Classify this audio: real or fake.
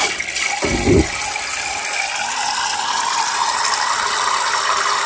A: real